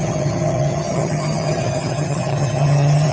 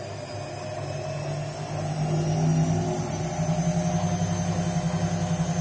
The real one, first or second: second